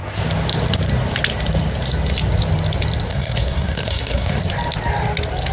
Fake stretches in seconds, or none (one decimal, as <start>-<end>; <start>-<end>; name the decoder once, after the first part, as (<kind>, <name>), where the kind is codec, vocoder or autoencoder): 3.1-4.4 (codec, SNAC)